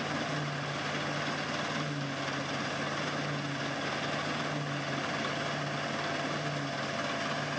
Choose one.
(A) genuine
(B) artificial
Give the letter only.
A